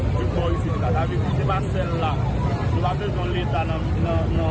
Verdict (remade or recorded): recorded